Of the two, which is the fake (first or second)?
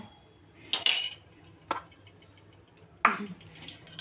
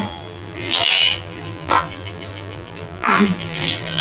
second